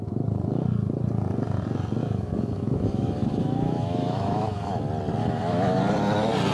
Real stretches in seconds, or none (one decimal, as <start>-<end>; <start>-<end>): 0.0-2.0; 4.8-5.2; 5.8-6.5